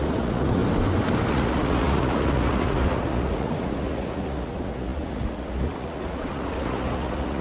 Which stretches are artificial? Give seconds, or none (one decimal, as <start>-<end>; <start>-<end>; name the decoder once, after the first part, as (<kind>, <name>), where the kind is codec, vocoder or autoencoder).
0.0-0.6 (vocoder, Vocos); 1.3-7.4

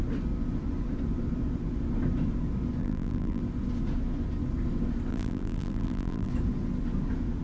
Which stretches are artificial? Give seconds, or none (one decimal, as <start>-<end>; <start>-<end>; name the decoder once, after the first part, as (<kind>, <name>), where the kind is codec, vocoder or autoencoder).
2.8-3.4 (vocoder, BigVGAN v2); 5.1-6.3